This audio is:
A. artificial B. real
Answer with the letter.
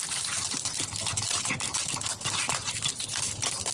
B